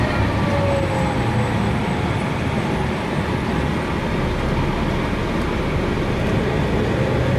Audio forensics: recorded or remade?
recorded